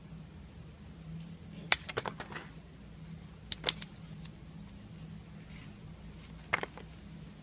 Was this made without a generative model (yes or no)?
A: yes